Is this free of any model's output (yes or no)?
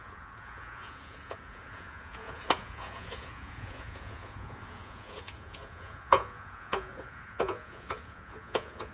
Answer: no